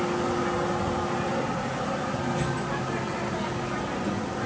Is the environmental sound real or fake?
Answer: real